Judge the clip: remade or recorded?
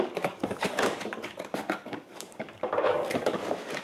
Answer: remade